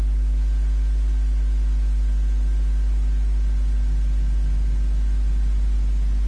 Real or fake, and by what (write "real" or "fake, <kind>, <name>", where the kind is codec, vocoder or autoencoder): real